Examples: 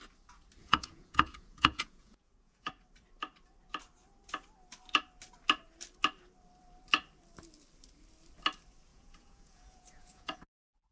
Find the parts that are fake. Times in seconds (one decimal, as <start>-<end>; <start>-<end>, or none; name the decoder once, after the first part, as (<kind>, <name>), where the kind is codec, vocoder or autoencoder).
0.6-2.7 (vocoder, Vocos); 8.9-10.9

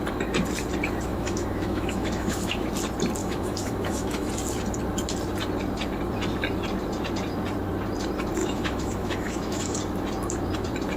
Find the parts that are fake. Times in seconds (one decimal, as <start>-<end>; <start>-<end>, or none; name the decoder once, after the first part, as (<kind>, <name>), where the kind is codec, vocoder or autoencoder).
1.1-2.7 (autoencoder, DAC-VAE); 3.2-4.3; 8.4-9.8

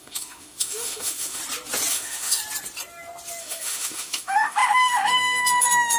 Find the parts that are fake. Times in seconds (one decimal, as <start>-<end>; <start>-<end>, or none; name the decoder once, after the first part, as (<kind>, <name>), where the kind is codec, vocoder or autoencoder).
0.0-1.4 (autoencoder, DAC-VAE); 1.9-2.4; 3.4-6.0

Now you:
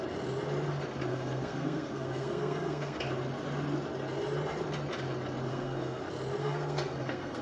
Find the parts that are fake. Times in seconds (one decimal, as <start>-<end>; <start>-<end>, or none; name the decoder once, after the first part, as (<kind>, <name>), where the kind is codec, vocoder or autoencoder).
1.1-3.0 (codec, SNAC); 5.5-6.0; 6.4-7.4

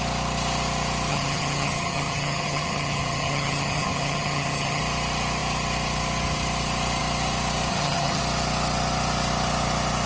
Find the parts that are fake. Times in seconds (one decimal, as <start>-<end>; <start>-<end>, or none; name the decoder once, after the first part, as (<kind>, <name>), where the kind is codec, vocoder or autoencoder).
1.1-4.8 (vocoder, HiFi-GAN); 7.7-8.2